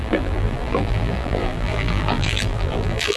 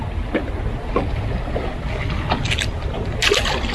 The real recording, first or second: second